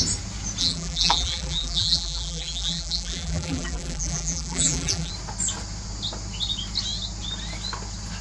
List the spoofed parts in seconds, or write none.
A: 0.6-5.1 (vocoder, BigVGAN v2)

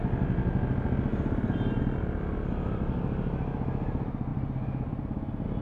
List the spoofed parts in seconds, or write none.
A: 1.1-1.8 (vocoder, BigVGAN v2)

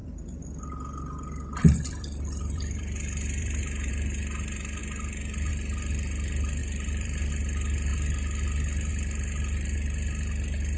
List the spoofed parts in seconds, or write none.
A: 0.0-3.9 (vocoder, BigVGAN v2); 6.6-7.3

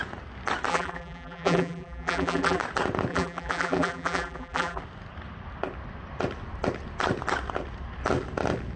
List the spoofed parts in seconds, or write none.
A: 0.7-2.6 (vocoder, BigVGAN v2); 3.1-4.8

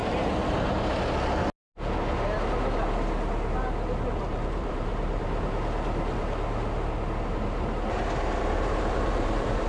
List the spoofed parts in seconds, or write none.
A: 4.2-4.9 (vocoder, BigVGAN v2); 8.4-9.7